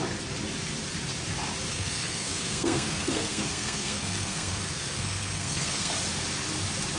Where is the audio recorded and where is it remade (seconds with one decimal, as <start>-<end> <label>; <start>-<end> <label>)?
0.0-1.7 recorded; 1.7-5.9 remade; 5.9-7.0 recorded